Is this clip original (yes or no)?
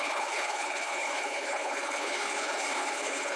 no